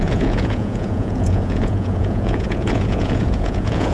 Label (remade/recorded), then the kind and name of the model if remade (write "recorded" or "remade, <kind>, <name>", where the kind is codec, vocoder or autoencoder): remade, vocoder, Vocos